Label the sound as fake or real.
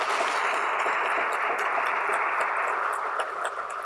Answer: real